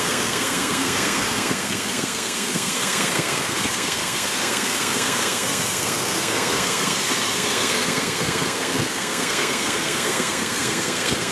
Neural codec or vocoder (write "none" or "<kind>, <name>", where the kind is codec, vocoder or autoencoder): codec, SNAC